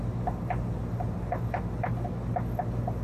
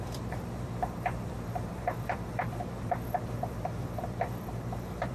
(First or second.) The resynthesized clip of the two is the second